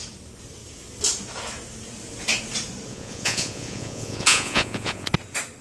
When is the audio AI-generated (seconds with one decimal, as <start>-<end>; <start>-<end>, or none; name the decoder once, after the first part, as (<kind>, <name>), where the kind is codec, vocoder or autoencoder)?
2.9-5.1 (vocoder, Vocos)